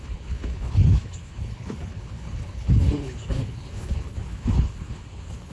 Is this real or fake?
fake